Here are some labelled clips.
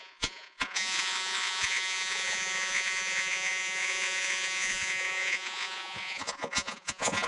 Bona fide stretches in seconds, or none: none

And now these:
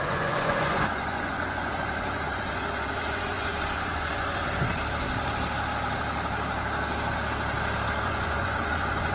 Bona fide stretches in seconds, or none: 4.8-8.0

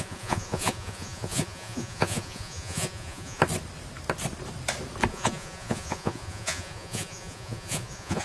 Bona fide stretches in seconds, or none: 3.4-5.1

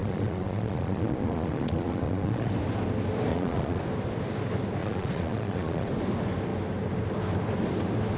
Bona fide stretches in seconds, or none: 2.5-3.3; 3.8-4.8; 5.9-8.2

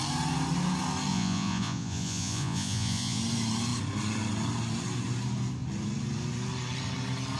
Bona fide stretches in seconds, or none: 0.0-1.1; 3.2-7.4

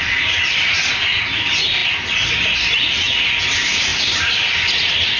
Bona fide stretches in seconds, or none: 0.0-5.2